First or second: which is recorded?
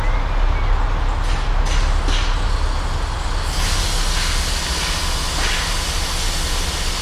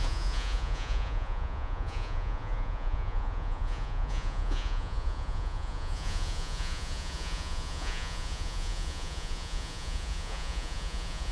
first